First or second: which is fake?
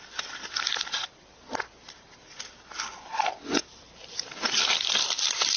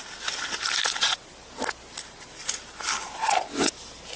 first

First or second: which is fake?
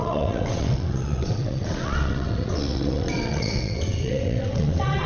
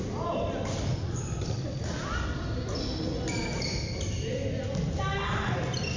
first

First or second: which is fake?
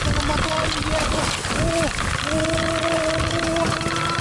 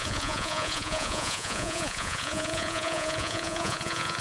second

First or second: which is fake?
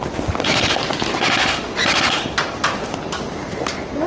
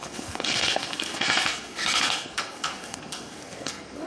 second